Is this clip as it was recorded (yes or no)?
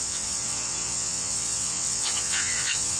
no